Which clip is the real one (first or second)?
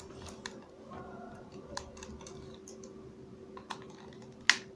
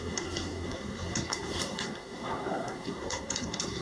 first